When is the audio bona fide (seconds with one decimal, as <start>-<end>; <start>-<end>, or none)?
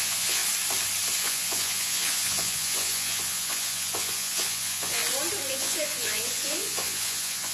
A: 0.4-1.2; 5.0-5.5